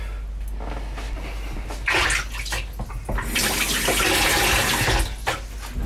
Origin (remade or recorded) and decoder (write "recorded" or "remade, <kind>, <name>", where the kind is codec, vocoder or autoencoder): recorded